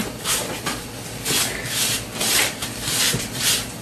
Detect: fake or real real